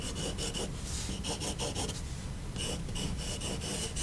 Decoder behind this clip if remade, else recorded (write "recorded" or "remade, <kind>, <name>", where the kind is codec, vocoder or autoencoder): recorded